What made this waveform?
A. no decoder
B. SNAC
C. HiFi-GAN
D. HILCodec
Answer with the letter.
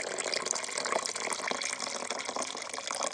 A